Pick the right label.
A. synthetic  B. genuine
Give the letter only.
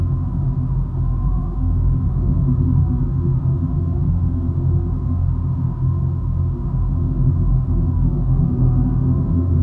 A